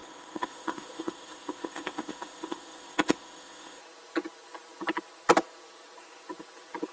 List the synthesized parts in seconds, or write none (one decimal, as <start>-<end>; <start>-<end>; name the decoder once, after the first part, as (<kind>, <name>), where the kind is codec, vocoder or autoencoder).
0.0-3.8 (codec, ZipCodec)